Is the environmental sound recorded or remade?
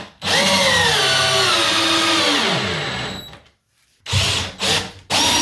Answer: recorded